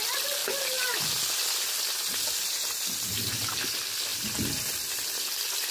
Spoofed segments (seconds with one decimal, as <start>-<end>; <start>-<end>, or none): 4.1-5.2